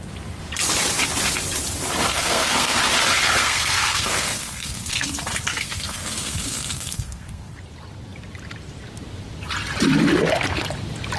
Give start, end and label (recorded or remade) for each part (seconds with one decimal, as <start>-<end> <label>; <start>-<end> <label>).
0.0-2.1 recorded; 2.1-2.8 remade; 2.8-3.4 recorded; 3.4-5.1 remade; 5.1-5.5 recorded; 5.5-7.5 remade; 7.5-11.2 recorded